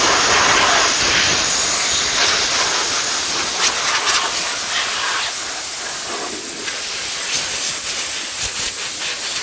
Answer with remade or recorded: recorded